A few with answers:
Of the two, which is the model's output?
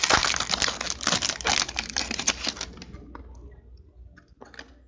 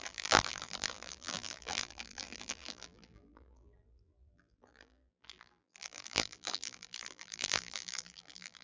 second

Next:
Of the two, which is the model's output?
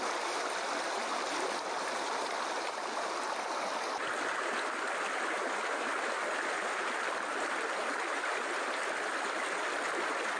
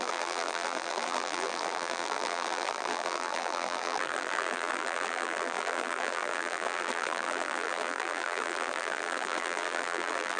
second